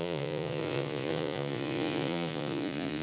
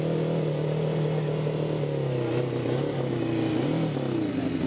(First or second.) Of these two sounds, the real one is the second